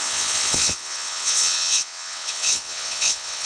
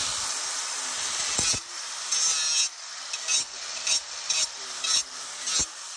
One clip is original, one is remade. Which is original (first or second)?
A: second